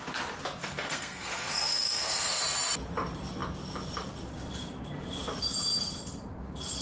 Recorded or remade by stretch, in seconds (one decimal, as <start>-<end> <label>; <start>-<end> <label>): 0.0-0.6 recorded; 0.6-2.4 remade; 2.4-6.8 recorded